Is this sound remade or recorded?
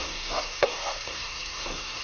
remade